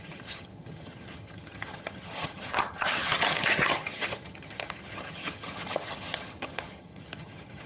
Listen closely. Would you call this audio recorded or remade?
remade